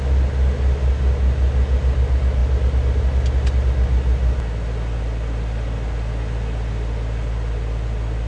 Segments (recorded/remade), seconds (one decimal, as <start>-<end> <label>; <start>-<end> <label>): 0.0-8.3 recorded